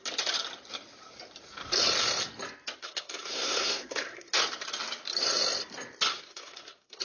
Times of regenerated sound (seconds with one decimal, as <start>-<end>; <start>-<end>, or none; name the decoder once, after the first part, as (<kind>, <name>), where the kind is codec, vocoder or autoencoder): 2.8-4.3 (codec, SNAC); 6.1-7.0